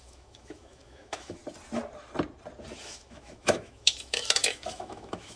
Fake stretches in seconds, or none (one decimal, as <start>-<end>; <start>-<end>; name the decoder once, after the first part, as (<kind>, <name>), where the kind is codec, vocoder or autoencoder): 0.0-1.4 (autoencoder, DAC-VAE); 2.8-5.4